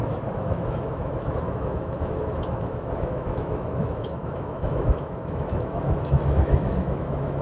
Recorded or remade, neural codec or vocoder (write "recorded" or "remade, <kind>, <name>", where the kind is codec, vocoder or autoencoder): remade, autoencoder, DAC-VAE